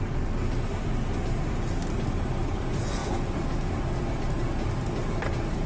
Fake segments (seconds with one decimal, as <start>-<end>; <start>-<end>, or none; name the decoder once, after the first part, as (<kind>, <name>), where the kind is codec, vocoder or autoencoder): none